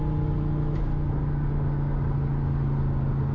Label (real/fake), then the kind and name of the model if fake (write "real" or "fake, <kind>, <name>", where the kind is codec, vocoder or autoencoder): real